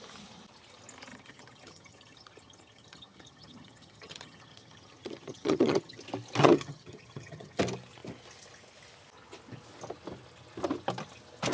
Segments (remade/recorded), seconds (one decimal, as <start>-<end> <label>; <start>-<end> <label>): 0.0-1.1 recorded; 1.1-6.0 remade; 6.0-6.4 recorded; 6.4-7.6 remade; 7.6-11.5 recorded